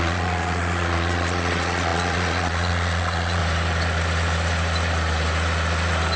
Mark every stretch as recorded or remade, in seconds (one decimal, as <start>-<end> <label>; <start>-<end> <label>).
0.0-3.4 remade; 3.4-6.2 recorded